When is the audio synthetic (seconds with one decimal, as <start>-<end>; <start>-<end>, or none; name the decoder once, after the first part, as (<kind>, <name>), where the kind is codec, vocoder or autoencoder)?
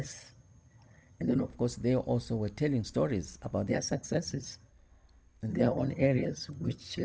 0.0-1.5 (vocoder, HiFi-GAN); 3.7-4.7; 5.5-7.0